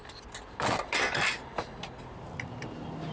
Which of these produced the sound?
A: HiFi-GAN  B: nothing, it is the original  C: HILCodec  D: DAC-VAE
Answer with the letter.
B